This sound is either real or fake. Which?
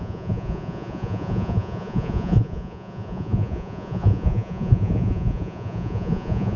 fake